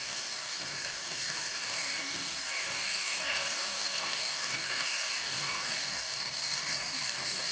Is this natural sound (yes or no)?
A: no